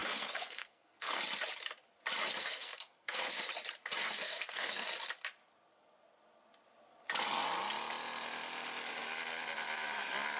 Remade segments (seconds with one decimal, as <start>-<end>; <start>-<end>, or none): 0.0-1.2; 2.4-3.3; 4.0-4.9